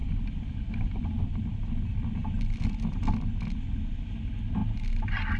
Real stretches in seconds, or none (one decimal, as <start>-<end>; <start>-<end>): 2.7-5.4